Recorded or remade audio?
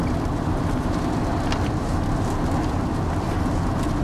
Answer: recorded